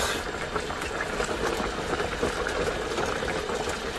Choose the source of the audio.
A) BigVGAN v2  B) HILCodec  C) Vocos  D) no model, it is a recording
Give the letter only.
D